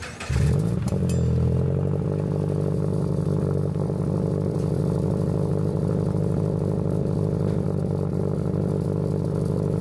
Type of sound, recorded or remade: recorded